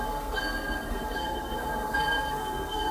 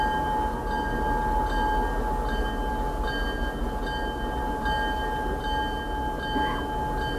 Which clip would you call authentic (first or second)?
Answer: second